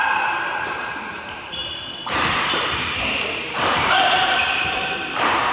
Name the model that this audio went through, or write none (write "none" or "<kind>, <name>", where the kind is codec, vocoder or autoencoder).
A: vocoder, BigVGAN v2